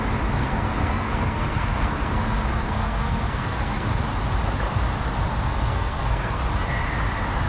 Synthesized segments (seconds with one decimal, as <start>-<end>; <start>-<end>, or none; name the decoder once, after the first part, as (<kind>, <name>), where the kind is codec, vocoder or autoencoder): 0.4-4.0 (codec, SNAC); 5.3-6.4